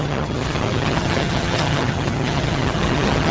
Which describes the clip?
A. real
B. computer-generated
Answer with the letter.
B